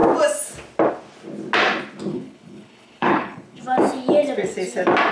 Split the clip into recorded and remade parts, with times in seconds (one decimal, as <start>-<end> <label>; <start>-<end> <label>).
0.0-2.1 recorded; 2.1-3.6 remade; 3.6-5.1 recorded